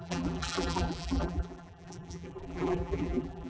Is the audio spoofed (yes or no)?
yes